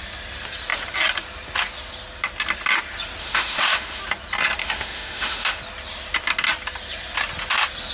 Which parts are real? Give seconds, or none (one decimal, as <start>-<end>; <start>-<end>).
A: 0.0-3.2; 4.0-4.6; 5.6-7.9